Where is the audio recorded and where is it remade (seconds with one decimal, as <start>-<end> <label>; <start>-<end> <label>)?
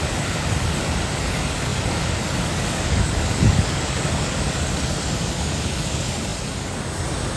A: 0.0-7.4 remade